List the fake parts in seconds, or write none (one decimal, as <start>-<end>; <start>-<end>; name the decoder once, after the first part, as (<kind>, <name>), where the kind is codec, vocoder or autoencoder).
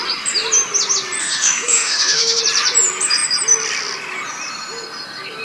1.2-2.4 (autoencoder, DAC-VAE)